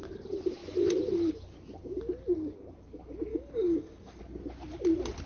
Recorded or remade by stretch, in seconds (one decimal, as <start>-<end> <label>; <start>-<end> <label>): 0.0-3.3 recorded; 3.3-4.2 remade; 4.2-5.3 recorded